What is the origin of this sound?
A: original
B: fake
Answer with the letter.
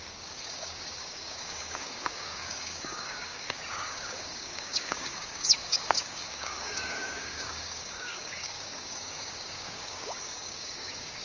B